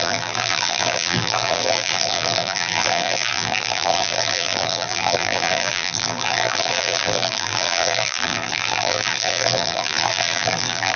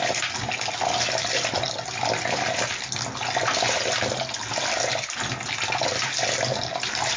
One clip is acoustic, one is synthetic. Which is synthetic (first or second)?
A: first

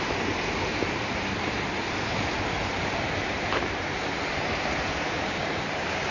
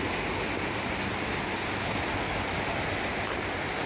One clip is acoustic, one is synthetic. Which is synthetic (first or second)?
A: first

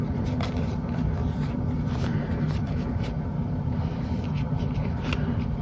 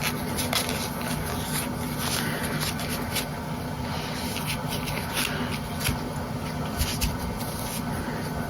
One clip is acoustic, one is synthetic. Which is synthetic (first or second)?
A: first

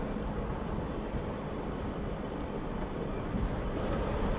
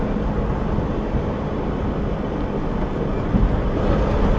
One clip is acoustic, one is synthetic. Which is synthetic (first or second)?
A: first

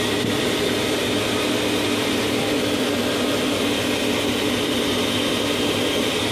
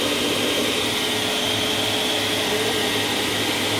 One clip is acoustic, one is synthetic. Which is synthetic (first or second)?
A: first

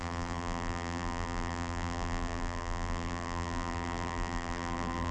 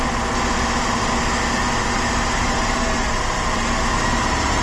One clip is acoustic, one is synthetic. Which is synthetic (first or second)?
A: first